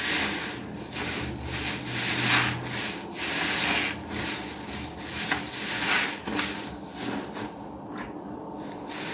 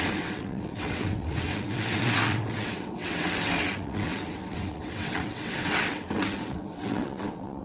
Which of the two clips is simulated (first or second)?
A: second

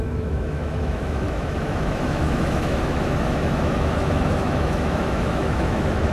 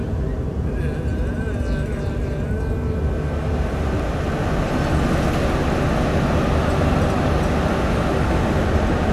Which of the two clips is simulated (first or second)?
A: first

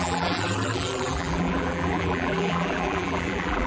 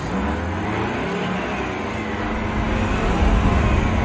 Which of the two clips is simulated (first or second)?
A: first